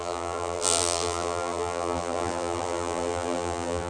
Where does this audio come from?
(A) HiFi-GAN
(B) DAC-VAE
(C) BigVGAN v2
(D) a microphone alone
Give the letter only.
C